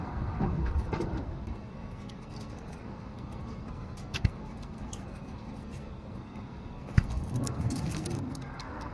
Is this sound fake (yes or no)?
yes